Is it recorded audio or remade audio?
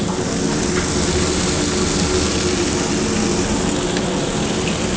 recorded